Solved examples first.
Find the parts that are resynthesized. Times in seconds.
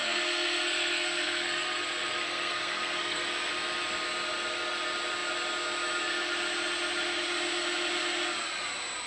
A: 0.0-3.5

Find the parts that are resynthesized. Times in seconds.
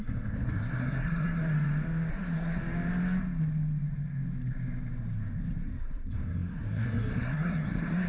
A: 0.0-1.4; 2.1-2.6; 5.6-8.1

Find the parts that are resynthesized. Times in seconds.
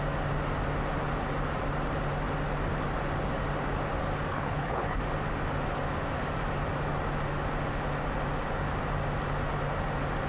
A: 4.3-5.0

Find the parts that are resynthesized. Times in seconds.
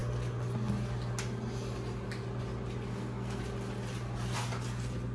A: 2.9-3.4